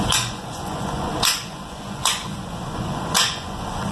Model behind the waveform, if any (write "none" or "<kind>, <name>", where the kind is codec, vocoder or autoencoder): vocoder, Vocos